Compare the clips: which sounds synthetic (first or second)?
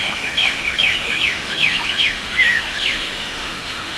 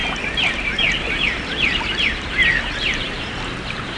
first